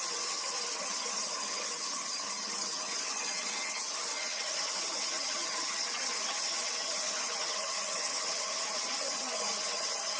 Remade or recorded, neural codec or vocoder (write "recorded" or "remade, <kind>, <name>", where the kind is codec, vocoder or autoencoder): remade, vocoder, HiFi-GAN